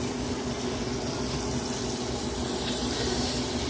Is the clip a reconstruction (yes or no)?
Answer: no